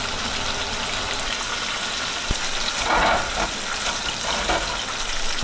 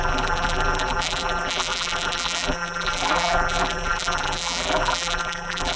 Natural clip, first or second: first